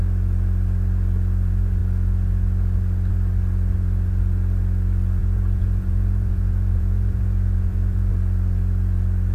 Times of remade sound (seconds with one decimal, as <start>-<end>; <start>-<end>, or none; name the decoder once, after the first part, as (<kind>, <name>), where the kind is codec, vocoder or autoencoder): 5.2-8.1 (vocoder, Vocos)